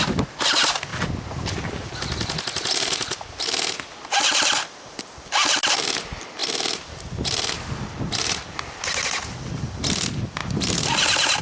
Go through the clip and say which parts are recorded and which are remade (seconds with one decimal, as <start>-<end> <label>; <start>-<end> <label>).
0.0-10.4 recorded; 10.4-11.4 remade